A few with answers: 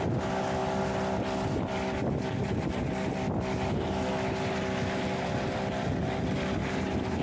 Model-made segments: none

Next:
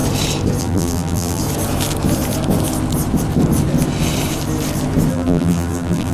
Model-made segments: 0.6-1.4 (vocoder, BigVGAN v2); 5.1-6.1

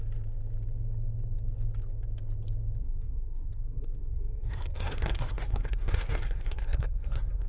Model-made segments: 2.8-7.5 (codec, SNAC)

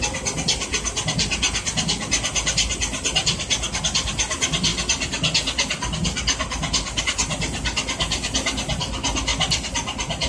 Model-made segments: none

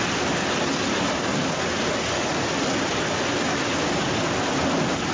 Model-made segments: none

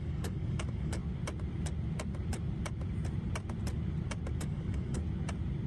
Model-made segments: 0.0-1.0 (codec, DAC); 4.4-5.0